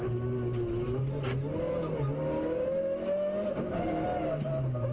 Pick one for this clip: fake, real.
real